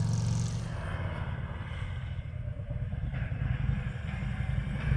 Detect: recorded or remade recorded